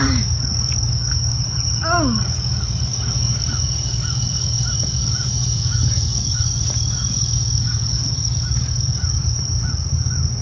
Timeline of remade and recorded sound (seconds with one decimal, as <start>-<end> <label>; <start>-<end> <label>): 0.0-10.4 remade